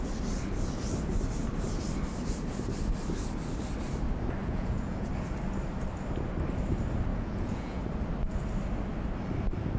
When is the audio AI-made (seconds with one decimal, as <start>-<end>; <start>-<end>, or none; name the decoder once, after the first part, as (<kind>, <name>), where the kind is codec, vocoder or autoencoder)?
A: 4.4-5.1 (vocoder, Vocos); 7.1-7.8

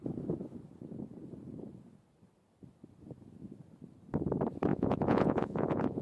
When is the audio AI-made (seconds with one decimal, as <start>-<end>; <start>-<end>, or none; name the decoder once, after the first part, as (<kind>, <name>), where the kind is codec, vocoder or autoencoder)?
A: 4.7-6.0 (vocoder, Vocos)

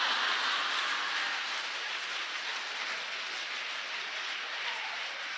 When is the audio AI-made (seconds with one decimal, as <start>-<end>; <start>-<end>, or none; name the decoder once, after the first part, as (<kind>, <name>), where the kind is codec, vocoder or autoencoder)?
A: 0.0-0.6 (vocoder, BigVGAN v2); 1.8-2.5; 3.9-5.4

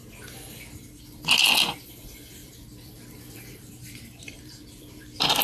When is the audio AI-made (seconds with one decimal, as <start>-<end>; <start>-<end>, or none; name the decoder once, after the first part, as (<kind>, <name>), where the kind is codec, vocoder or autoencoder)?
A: 2.4-5.4 (vocoder, BigVGAN v2)